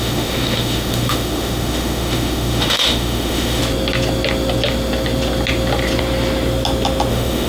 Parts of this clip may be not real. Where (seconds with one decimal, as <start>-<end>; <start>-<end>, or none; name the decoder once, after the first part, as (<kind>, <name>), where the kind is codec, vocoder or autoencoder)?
0.0-3.6 (autoencoder, DAC-VAE); 7.1-7.5